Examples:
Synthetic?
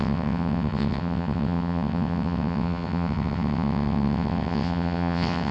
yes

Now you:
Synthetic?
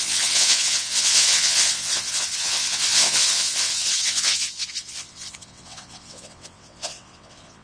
yes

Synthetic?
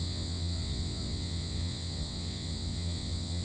yes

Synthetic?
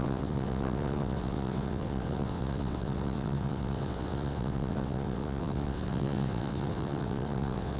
yes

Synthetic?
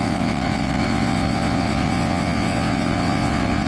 yes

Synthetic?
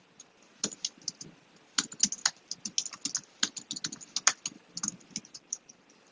no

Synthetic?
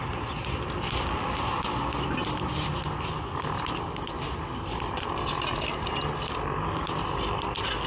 no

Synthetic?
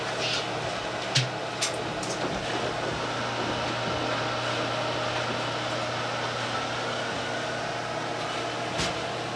no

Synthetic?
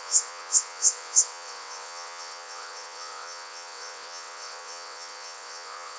yes